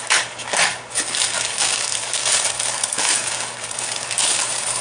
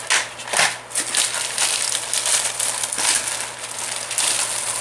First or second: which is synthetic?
first